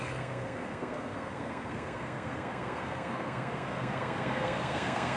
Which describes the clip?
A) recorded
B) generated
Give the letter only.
B